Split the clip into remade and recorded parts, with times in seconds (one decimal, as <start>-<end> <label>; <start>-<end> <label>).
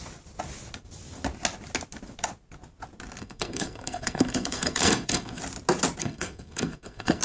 0.0-3.2 recorded; 3.2-5.4 remade; 5.4-6.0 recorded; 6.0-7.2 remade